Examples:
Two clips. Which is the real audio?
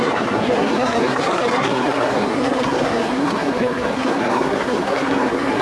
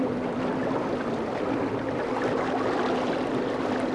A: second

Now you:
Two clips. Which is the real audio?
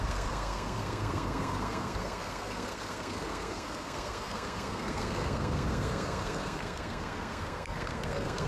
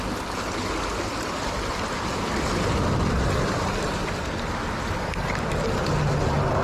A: second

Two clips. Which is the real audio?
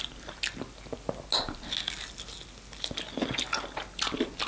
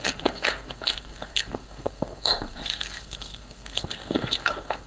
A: first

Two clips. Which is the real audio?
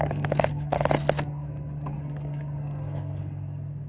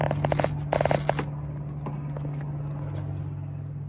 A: second